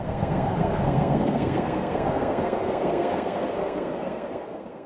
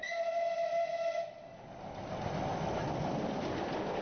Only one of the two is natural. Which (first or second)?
second